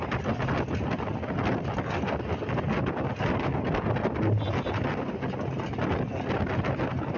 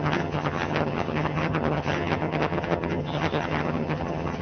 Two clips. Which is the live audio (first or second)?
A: first